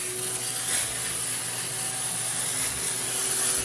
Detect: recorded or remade recorded